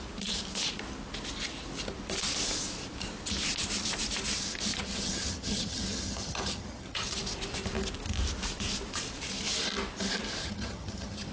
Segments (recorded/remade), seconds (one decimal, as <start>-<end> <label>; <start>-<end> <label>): 0.0-4.7 recorded; 4.7-7.1 remade; 7.1-10.4 recorded; 10.4-11.3 remade

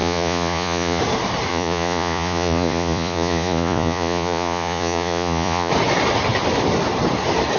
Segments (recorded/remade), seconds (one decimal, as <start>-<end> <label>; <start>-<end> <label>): 0.0-1.0 remade; 1.0-1.5 recorded; 1.5-5.7 remade; 5.7-7.6 recorded